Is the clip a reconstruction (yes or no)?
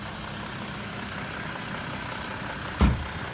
no